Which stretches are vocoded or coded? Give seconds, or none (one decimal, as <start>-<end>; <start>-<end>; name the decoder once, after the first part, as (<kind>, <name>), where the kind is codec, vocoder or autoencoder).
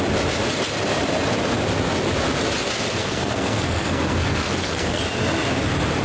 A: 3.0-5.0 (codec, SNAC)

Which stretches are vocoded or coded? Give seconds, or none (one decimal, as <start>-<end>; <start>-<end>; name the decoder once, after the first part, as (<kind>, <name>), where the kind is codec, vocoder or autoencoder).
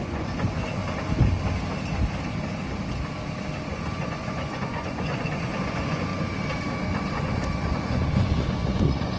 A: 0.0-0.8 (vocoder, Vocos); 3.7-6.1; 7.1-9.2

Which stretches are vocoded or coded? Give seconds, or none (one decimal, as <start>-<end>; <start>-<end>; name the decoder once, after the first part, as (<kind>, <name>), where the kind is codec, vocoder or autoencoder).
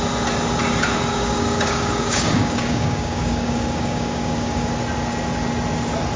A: 1.1-4.7 (codec, DAC)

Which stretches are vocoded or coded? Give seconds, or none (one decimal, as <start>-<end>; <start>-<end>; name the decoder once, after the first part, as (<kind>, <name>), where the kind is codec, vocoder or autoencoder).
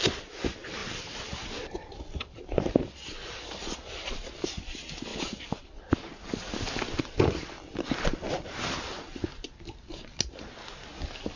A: 0.8-2.7 (vocoder, BigVGAN v2); 3.2-4.2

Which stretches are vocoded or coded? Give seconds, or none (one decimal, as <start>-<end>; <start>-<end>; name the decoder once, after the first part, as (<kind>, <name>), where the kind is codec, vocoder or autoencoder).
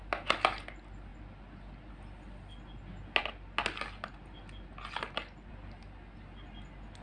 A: none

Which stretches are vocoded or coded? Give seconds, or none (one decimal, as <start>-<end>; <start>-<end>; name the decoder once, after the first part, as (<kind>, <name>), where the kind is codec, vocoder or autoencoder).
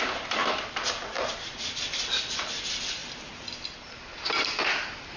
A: 3.0-4.6 (vocoder, BigVGAN v2)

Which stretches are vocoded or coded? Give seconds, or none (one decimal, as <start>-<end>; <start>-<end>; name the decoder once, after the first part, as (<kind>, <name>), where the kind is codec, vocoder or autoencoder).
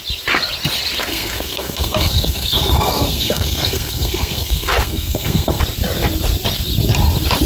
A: 1.1-5.6 (codec, SNAC)